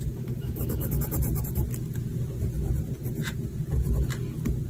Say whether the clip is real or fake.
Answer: real